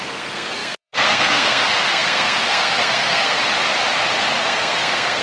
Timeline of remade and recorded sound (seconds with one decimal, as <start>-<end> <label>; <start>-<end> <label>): 0.0-3.4 remade; 3.4-4.4 recorded; 4.4-5.2 remade